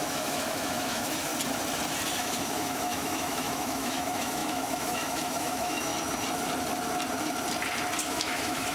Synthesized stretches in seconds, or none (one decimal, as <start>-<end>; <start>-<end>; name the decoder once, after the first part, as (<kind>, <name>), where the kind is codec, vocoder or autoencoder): 0.0-1.3 (autoencoder, DAC-VAE); 2.2-5.9; 8.1-8.7